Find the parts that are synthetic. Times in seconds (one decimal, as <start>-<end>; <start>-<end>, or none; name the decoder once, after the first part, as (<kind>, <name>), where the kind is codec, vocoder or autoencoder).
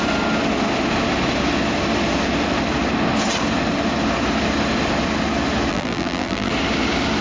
5.7-6.5 (vocoder, BigVGAN v2)